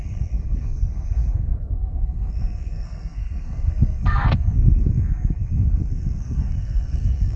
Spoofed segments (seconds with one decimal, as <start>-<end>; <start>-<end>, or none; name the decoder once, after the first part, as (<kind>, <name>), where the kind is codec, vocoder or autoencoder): 0.0-7.4 (codec, SNAC)